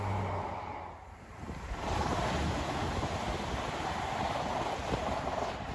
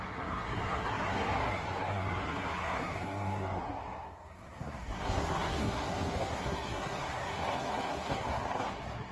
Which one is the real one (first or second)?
first